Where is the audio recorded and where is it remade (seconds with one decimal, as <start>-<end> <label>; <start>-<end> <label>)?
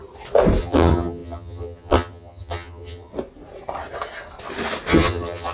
0.0-0.6 recorded; 0.6-3.1 remade; 3.1-4.9 recorded; 4.9-5.5 remade